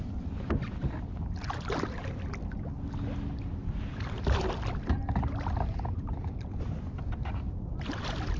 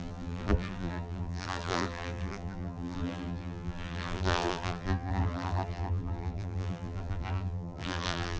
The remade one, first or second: second